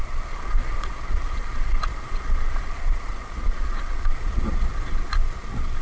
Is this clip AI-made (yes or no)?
yes